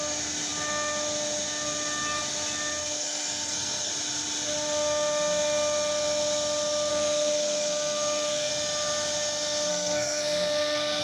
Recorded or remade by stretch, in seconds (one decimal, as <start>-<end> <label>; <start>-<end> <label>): 0.0-2.8 recorded; 2.8-3.9 remade; 3.9-6.9 recorded; 6.9-8.5 remade; 8.5-9.7 recorded; 9.7-11.0 remade